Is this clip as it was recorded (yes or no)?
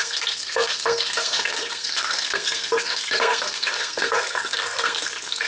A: no